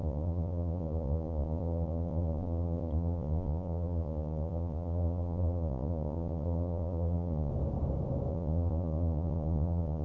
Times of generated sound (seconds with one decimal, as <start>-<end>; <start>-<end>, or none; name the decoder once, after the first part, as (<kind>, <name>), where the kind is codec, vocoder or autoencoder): 0.0-7.5 (vocoder, Vocos); 8.3-10.0